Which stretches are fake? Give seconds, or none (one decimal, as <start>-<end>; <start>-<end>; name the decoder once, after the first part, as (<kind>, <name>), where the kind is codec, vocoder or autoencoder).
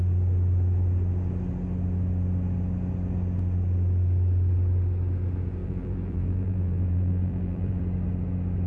5.6-7.8 (vocoder, BigVGAN v2)